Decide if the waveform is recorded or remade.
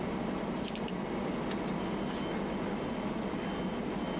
recorded